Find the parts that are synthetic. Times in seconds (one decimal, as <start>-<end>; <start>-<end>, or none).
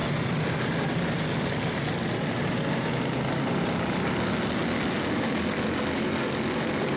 none